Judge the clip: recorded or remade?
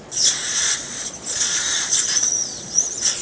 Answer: remade